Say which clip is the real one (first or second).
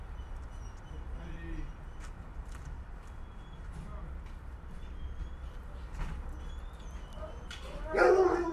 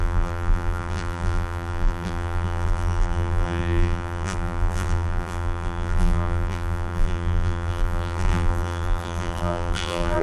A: first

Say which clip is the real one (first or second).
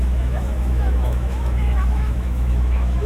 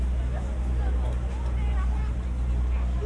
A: second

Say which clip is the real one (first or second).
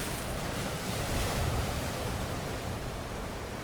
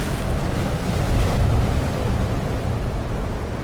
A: second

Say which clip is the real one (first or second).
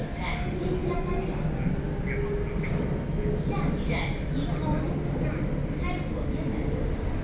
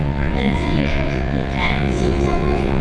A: first